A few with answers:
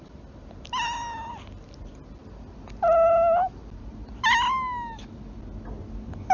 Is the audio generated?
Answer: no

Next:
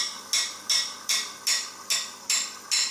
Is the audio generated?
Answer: no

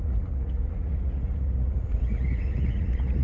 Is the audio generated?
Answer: yes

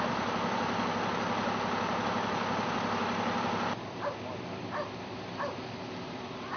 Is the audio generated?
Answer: no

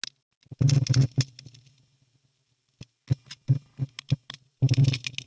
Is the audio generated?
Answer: no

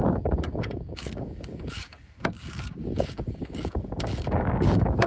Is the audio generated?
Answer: yes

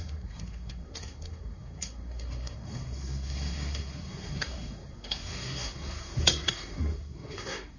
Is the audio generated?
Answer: yes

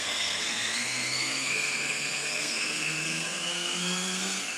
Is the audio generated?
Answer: yes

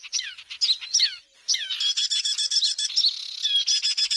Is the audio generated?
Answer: no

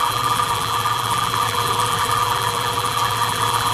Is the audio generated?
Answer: yes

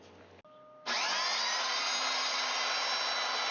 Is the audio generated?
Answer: no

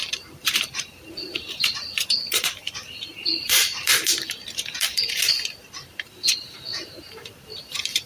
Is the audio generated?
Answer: yes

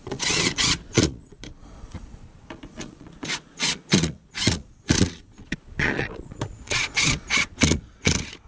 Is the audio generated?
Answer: yes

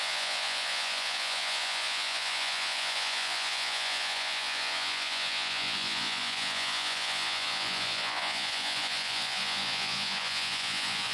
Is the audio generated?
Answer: yes